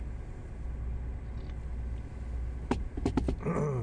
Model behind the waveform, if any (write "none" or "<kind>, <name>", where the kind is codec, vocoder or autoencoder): none